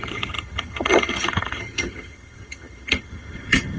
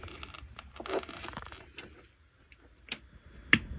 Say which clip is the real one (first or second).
second